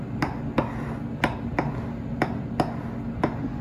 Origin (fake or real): real